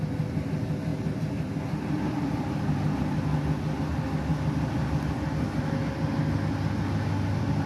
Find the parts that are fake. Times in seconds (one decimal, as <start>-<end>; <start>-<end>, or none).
0.9-2.6